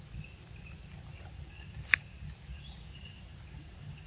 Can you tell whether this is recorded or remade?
recorded